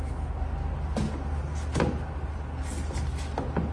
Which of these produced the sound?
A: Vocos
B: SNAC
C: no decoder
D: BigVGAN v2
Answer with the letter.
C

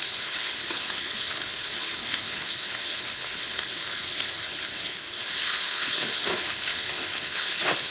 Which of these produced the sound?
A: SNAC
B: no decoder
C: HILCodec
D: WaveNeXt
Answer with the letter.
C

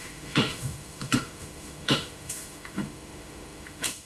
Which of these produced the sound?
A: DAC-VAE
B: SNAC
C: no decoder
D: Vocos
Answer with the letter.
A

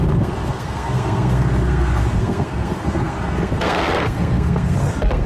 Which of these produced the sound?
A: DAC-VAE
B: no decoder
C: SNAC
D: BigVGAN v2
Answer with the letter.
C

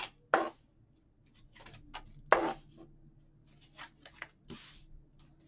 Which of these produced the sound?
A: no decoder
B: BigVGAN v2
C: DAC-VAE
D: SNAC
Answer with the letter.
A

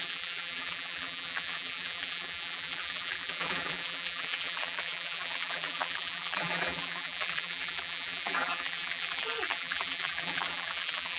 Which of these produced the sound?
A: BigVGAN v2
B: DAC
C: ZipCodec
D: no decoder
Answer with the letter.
A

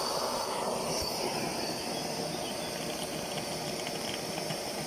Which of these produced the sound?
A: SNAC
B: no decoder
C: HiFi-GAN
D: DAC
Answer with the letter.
B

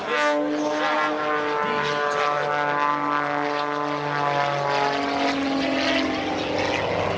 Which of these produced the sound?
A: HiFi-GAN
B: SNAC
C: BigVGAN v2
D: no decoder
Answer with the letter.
D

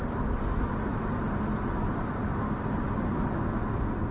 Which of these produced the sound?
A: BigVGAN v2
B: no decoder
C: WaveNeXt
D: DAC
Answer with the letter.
B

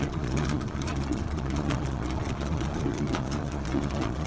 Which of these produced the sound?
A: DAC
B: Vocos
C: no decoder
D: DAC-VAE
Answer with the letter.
B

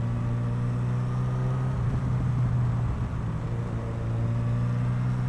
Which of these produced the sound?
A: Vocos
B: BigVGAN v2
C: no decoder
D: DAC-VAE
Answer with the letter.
C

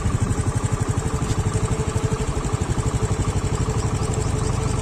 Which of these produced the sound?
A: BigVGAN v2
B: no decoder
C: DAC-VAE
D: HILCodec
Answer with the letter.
B